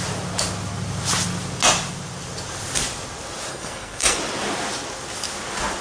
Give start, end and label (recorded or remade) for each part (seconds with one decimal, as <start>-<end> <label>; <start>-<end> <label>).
0.0-3.5 recorded; 3.5-4.2 remade; 4.2-5.8 recorded